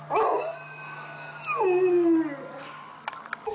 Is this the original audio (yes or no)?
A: yes